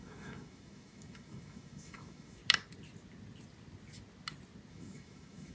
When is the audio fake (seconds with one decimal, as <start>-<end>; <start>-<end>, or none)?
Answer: 0.0-2.4; 4.7-5.5